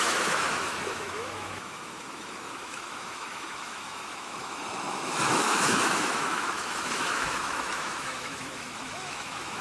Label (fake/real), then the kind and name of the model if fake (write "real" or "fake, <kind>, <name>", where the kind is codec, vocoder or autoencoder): fake, autoencoder, DAC-VAE